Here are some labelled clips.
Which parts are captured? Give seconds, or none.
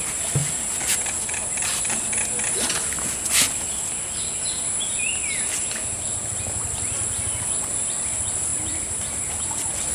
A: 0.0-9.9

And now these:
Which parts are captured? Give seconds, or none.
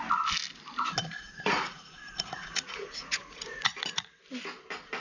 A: 0.0-1.2; 4.2-5.0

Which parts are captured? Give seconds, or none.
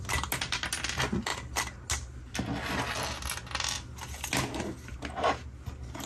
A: 0.0-6.1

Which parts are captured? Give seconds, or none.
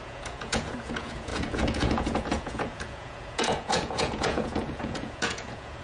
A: none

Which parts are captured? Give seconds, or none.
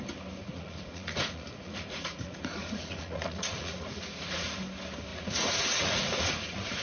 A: 0.0-0.4; 4.5-5.1